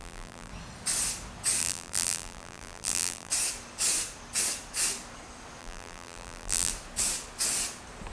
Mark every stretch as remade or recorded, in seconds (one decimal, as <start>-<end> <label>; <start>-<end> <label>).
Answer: 0.0-0.5 remade; 0.5-1.6 recorded; 1.6-3.3 remade; 3.3-5.6 recorded; 5.6-6.7 remade; 6.7-8.1 recorded